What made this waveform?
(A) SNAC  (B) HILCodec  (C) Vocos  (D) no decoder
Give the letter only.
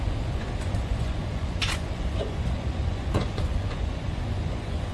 C